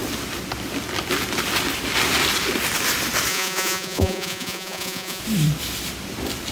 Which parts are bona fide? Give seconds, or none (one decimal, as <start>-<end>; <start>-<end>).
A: 0.0-3.3; 5.2-6.5